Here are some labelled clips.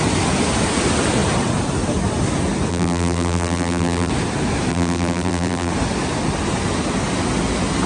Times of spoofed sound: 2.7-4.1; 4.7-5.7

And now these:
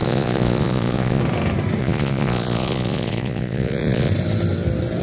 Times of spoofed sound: 0.0-1.2; 1.8-4.1

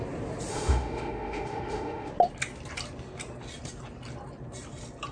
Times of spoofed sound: 0.5-2.1

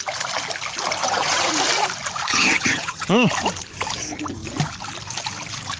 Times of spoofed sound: 1.0-1.5; 2.3-3.1